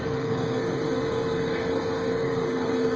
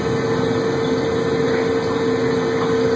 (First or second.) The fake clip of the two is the first